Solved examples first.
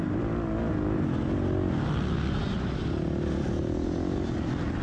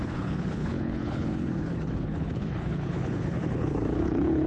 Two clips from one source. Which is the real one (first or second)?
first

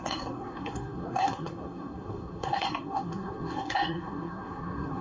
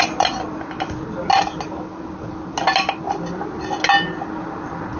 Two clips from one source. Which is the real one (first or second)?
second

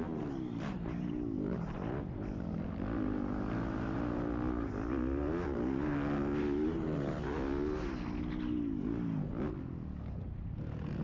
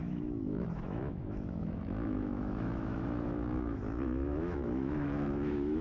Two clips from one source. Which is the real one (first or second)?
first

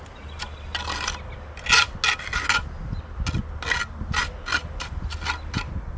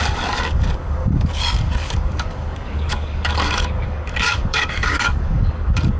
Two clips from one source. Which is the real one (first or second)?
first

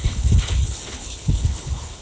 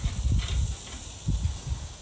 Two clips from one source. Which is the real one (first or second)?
second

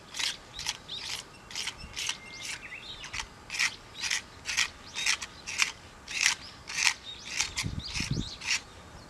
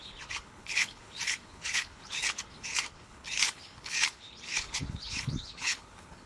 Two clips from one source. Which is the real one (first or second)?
first